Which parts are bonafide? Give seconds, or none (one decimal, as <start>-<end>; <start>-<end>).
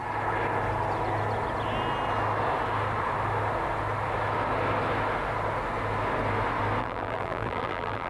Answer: 0.0-6.8